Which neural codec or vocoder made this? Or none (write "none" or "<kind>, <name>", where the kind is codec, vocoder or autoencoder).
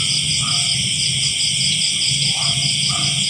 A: none